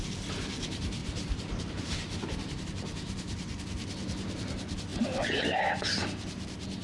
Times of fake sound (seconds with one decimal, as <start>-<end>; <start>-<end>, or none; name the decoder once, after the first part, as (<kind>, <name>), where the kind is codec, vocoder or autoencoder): 1.0-3.6 (vocoder, BigVGAN v2); 4.9-5.6